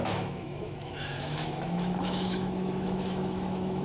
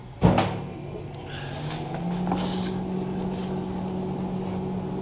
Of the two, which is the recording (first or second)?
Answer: second